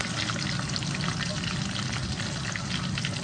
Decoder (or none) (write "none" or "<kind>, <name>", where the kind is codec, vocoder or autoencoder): none